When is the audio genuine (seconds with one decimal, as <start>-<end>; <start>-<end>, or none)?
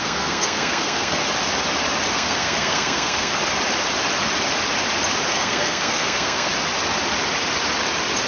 1.2-2.1; 3.3-5.3; 6.5-8.3